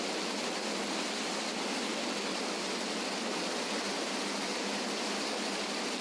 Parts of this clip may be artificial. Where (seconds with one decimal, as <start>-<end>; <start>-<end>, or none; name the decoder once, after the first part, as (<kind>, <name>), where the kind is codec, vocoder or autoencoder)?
none